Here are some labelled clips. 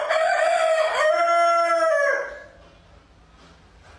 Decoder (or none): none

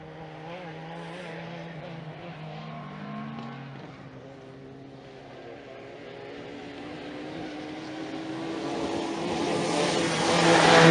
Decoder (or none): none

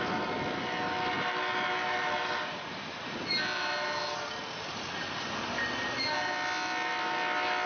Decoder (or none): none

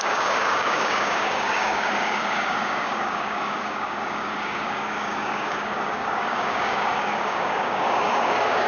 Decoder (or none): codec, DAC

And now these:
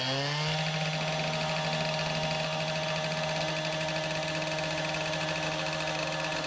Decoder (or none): none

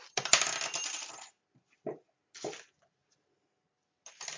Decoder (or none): none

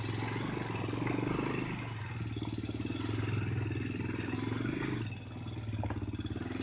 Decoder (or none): none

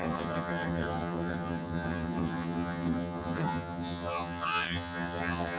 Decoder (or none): vocoder, HiFi-GAN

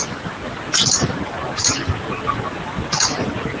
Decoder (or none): none